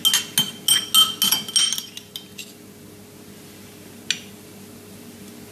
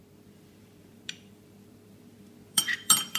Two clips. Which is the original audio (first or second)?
first